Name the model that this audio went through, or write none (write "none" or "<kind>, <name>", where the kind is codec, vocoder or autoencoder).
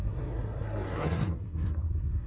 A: codec, SNAC